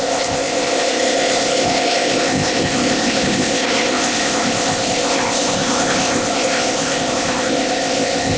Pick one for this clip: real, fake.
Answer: fake